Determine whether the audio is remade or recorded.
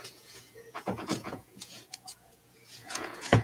remade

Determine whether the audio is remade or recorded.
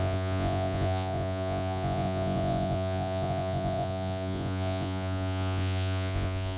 remade